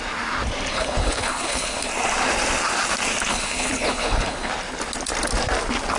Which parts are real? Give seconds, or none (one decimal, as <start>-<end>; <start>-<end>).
0.0-0.7; 1.9-3.3; 4.5-6.0